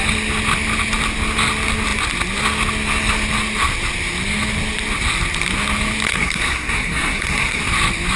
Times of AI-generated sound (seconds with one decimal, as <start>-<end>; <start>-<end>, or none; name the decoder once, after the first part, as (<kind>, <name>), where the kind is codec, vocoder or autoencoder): 6.1-7.6 (codec, SNAC)